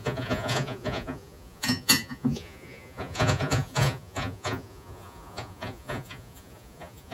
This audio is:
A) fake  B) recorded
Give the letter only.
A